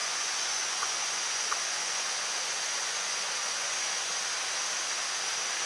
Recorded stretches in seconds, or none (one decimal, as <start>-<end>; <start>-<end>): 4.1-5.7